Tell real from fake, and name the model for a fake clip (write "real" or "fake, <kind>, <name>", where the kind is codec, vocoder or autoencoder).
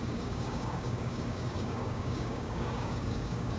fake, codec, DAC